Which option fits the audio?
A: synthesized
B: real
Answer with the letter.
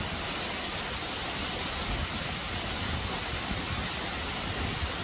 B